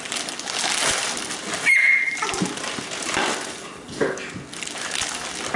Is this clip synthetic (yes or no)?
no